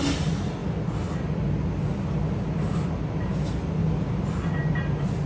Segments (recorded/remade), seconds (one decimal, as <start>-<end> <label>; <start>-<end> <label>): 0.0-5.3 recorded